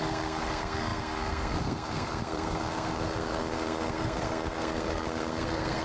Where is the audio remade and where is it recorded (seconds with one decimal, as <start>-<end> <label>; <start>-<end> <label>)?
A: 0.0-5.8 remade